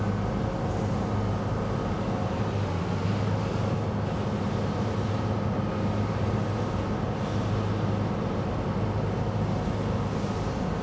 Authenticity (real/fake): real